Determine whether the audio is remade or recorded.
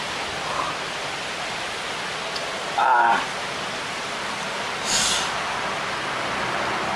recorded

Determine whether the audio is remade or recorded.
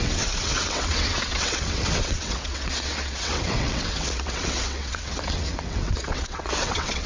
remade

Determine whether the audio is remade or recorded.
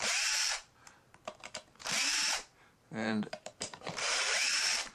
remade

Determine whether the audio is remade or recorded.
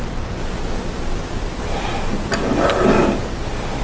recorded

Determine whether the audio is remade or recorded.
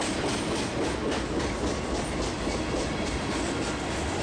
recorded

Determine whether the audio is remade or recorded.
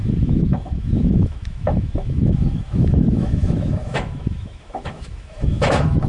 remade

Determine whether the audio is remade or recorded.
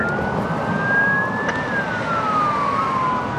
recorded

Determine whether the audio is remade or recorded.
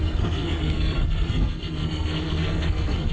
remade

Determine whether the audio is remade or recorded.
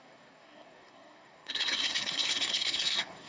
remade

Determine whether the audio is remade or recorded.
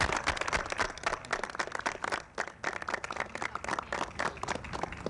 recorded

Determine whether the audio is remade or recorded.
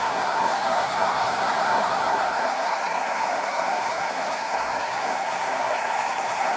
remade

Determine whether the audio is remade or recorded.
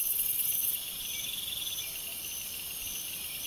remade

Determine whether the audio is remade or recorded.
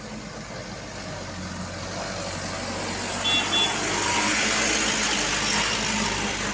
recorded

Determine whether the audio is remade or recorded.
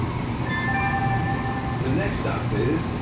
recorded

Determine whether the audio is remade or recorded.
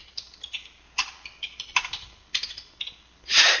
recorded